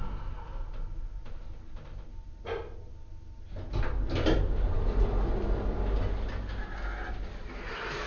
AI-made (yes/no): no